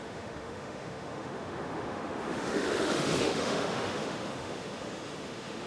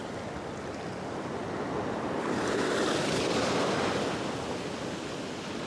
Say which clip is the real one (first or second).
second